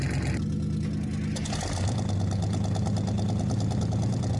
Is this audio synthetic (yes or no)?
no